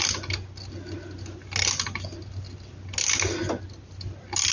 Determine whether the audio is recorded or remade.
recorded